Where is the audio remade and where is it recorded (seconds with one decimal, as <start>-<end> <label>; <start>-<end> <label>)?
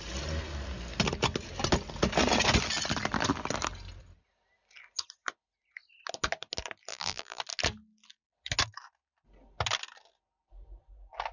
0.0-6.9 recorded; 6.9-7.4 remade; 7.4-11.3 recorded